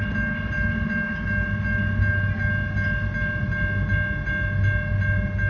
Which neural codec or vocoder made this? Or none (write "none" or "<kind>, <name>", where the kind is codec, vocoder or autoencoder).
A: none